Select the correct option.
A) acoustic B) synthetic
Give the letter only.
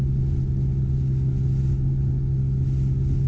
A